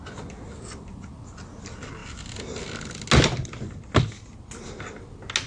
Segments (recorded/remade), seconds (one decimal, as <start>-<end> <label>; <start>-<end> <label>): 0.0-5.5 recorded